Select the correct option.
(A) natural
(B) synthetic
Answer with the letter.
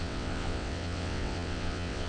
B